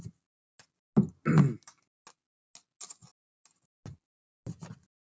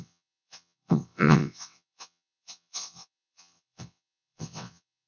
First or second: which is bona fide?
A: first